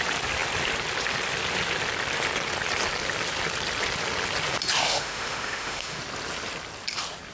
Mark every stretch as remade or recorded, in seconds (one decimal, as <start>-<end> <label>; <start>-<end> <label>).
0.0-4.8 recorded; 4.8-6.0 remade; 6.0-7.3 recorded